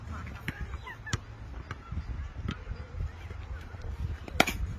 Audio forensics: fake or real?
real